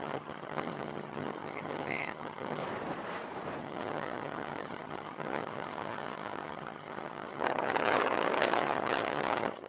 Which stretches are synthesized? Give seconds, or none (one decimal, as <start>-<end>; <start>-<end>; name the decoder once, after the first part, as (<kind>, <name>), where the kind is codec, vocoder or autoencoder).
0.0-2.6 (vocoder, HiFi-GAN); 3.6-9.7